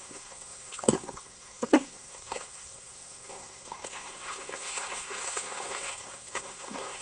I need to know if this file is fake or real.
fake